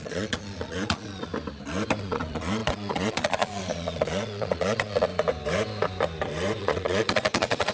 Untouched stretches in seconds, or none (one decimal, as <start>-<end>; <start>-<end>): 1.3-2.0; 5.1-6.6